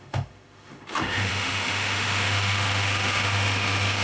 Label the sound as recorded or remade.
remade